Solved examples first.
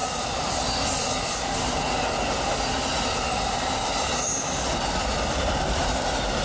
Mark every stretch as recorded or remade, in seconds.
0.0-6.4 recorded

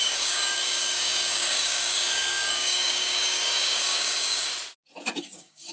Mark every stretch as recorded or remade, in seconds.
0.0-4.5 remade; 4.5-5.2 recorded; 5.2-5.7 remade

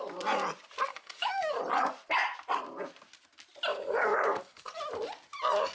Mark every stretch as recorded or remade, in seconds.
0.0-0.9 recorded; 0.9-1.6 remade; 1.6-3.7 recorded; 3.7-4.8 remade; 4.8-5.7 recorded

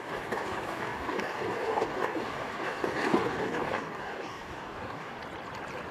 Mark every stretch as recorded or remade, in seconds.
0.0-5.2 remade; 5.2-5.9 recorded

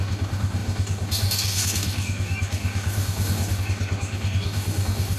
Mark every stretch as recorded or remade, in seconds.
0.0-5.2 remade